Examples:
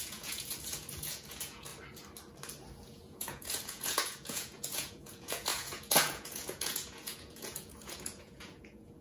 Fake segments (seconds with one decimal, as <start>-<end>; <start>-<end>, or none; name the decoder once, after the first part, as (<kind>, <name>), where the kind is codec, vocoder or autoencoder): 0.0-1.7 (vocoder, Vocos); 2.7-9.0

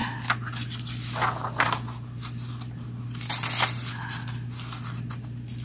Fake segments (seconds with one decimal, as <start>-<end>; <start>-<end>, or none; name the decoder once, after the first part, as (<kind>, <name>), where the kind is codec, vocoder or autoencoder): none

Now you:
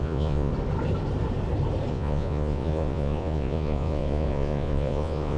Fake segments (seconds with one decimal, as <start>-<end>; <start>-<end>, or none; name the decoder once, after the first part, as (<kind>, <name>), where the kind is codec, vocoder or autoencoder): 0.0-0.5 (vocoder, Vocos); 1.9-5.4

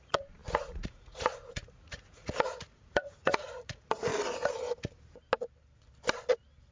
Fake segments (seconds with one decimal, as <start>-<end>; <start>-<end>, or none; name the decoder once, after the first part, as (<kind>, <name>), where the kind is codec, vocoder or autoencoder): 0.0-4.1 (vocoder, Vocos)